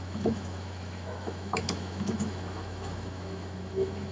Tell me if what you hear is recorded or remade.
remade